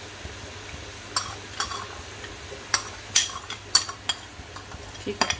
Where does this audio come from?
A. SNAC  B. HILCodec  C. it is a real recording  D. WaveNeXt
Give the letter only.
C